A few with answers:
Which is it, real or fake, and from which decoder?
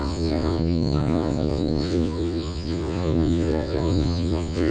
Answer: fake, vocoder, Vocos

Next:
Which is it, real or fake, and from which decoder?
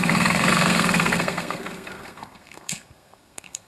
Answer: fake, codec, SNAC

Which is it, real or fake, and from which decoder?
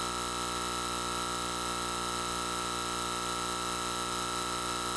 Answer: real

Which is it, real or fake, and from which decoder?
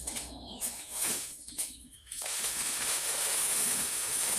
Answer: fake, autoencoder, DAC-VAE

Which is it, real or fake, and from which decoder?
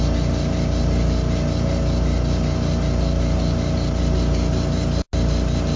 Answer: real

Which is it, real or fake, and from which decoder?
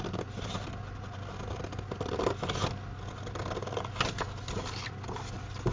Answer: real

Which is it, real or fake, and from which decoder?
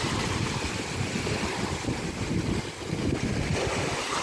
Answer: real